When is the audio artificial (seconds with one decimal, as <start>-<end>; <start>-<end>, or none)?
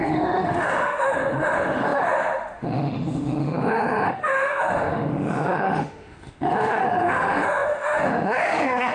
0.0-8.9